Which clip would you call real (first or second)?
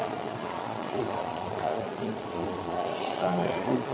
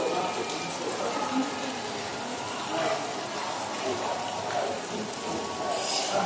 second